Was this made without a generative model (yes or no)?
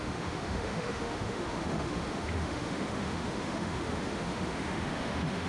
no